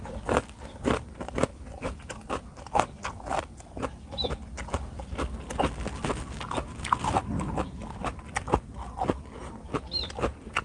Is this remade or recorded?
recorded